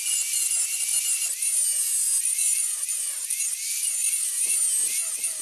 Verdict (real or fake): real